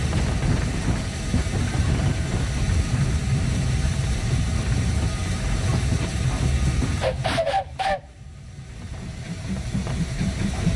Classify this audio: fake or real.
fake